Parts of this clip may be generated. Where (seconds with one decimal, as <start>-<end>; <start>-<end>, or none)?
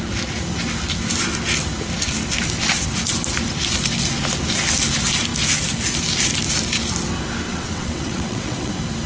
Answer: 7.5-8.7